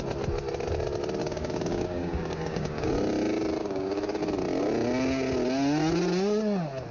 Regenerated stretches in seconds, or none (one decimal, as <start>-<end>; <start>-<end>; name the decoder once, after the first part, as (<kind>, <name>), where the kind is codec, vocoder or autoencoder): 1.2-2.9 (codec, DAC); 3.6-4.2